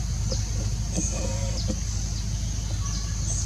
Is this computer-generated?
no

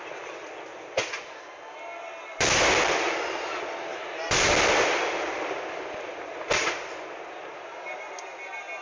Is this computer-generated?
no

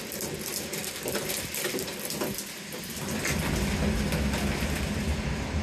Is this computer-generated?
no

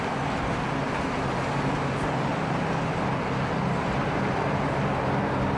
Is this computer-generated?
no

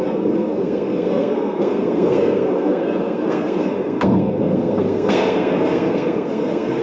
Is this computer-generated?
yes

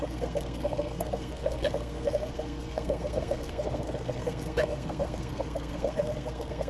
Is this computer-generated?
yes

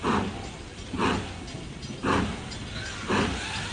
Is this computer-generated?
no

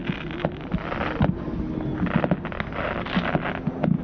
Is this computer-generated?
no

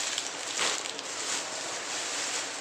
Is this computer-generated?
no